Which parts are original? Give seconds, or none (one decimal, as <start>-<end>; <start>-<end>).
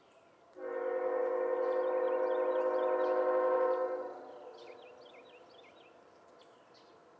0.0-7.2